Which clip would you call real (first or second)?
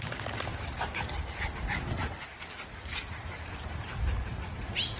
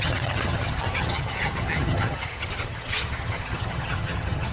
first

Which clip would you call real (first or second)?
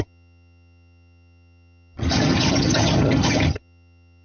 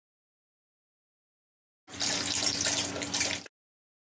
second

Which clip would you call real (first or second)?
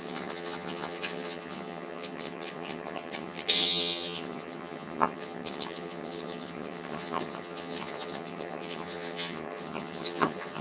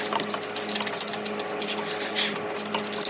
second